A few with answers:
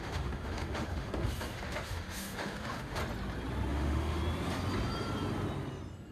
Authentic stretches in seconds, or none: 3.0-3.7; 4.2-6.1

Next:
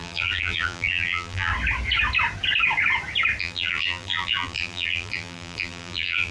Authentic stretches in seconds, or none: 1.5-3.4

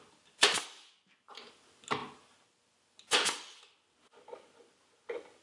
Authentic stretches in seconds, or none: 0.0-5.4